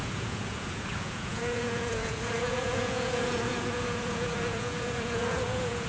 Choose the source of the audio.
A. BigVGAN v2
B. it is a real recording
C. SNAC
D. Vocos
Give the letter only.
D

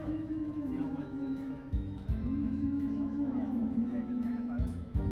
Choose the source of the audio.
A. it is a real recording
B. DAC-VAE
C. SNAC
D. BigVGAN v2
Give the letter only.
B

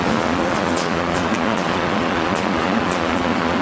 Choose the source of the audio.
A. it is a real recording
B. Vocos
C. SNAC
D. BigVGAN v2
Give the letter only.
B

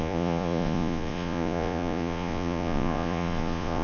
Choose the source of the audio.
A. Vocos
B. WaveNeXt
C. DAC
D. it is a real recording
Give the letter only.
A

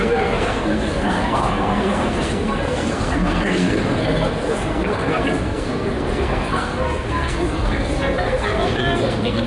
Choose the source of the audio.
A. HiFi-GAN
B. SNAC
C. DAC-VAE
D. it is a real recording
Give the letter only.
B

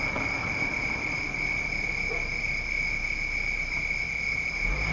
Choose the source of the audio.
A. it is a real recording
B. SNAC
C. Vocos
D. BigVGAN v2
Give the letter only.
A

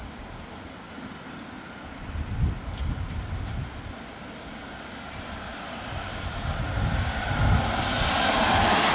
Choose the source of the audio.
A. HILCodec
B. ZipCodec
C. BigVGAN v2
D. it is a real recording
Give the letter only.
D